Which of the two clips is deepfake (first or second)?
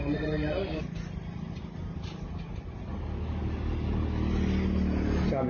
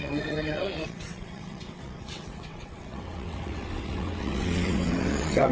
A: second